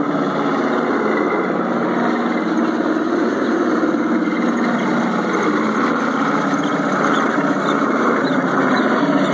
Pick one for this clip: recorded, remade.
recorded